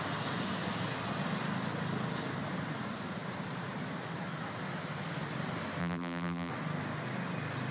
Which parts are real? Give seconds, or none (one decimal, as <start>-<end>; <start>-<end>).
0.0-5.8; 6.5-7.7